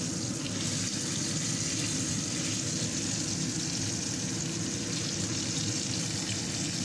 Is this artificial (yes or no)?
no